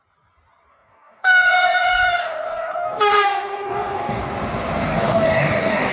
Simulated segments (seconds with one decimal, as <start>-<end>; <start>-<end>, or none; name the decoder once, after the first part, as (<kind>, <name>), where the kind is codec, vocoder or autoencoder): 0.7-4.2 (codec, DAC); 4.9-5.9